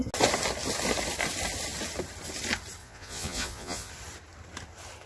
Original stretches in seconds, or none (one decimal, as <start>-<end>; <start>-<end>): 0.0-2.8; 3.9-5.1